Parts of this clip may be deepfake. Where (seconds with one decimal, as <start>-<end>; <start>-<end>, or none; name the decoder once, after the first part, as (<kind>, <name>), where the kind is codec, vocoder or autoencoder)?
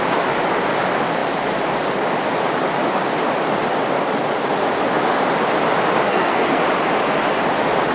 6.1-6.6 (codec, SNAC)